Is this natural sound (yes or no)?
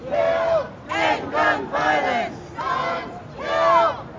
yes